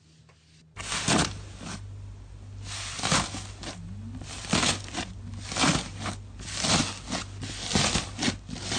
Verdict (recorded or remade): recorded